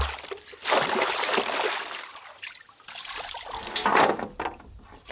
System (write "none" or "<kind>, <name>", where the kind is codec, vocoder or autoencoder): none